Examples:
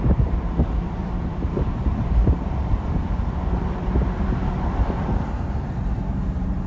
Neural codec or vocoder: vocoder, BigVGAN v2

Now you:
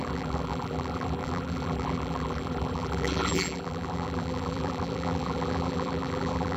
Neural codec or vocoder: vocoder, BigVGAN v2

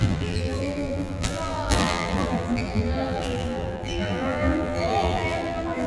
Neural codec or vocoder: vocoder, BigVGAN v2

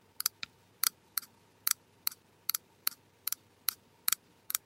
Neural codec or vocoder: vocoder, BigVGAN v2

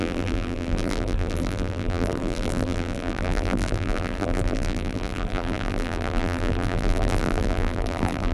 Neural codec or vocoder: vocoder, BigVGAN v2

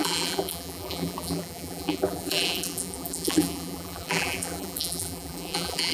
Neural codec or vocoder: vocoder, BigVGAN v2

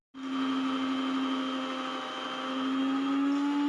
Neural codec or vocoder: none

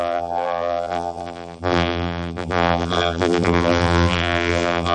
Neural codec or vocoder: vocoder, BigVGAN v2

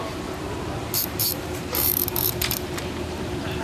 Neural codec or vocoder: vocoder, BigVGAN v2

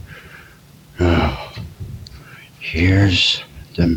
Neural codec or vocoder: vocoder, BigVGAN v2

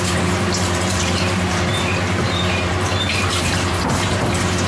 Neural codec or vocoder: vocoder, BigVGAN v2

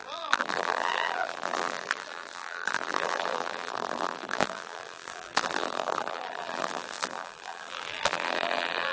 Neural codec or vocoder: vocoder, BigVGAN v2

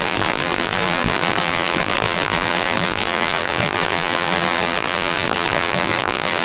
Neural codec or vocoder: vocoder, BigVGAN v2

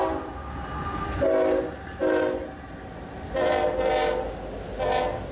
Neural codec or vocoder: none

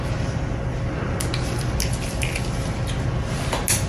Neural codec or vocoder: none